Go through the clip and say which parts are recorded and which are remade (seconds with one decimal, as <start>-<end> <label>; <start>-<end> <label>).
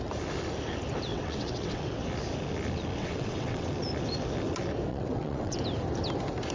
0.0-1.1 recorded; 1.1-2.0 remade; 2.0-3.0 recorded; 3.0-3.7 remade; 3.7-4.9 recorded; 4.9-5.6 remade; 5.6-6.5 recorded